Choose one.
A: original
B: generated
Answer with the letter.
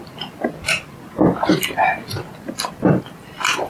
A